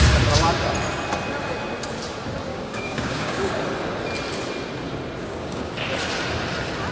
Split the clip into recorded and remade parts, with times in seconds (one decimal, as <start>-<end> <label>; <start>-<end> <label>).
0.0-2.5 recorded; 2.5-3.5 remade; 3.5-5.2 recorded; 5.2-5.7 remade; 5.7-6.9 recorded